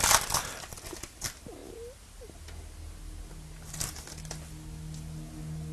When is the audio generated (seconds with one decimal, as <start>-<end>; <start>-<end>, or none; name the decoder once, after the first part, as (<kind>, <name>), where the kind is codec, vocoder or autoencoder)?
none